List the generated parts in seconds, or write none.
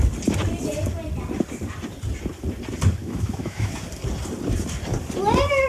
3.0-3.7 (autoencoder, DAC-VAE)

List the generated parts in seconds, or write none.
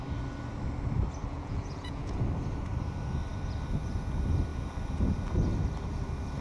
1.3-2.2 (vocoder, Vocos)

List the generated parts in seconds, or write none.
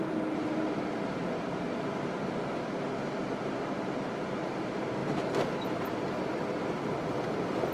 none